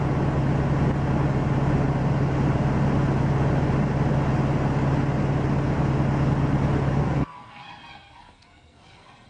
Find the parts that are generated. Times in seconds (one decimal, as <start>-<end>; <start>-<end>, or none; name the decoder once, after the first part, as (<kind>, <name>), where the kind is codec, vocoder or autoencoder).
7.0-9.3 (codec, SNAC)